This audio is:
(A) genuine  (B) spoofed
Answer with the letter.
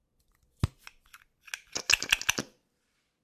A